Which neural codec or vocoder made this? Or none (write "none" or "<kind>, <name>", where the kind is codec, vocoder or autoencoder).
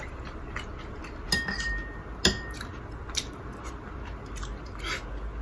none